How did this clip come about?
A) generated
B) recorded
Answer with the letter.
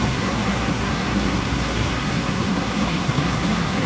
A